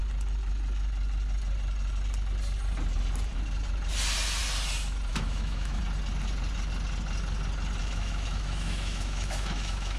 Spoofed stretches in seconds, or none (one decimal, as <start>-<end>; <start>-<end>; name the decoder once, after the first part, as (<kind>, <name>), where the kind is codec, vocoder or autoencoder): 5.1-5.8 (autoencoder, DAC-VAE); 7.8-10.0